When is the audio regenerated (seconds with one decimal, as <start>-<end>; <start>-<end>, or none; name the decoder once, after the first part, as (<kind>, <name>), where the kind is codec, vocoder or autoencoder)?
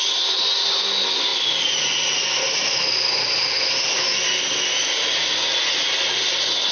none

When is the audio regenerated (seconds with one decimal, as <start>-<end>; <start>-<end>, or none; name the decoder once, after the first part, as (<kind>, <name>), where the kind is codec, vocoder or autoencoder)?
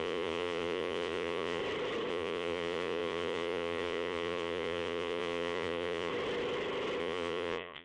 0.0-1.6 (vocoder, Vocos); 2.1-6.1; 7.0-7.8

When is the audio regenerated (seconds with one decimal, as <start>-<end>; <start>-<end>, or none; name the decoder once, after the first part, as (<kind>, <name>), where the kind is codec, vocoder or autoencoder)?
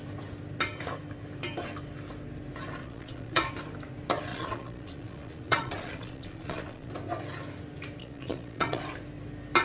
2.8-3.5 (vocoder, Vocos); 4.3-6.9; 8.0-8.8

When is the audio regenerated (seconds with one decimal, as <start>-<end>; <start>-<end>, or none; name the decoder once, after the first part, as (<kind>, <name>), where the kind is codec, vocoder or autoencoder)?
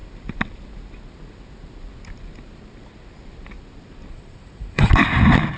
4.1-4.9 (vocoder, Vocos)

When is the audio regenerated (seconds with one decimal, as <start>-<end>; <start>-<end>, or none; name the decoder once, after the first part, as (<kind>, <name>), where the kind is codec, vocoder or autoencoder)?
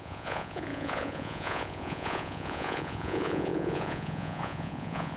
0.0-5.2 (vocoder, Vocos)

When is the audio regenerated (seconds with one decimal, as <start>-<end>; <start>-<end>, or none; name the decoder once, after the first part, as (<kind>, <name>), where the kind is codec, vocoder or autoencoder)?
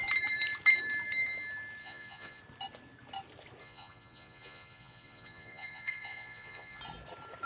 1.8-2.4 (vocoder, Vocos); 3.6-6.8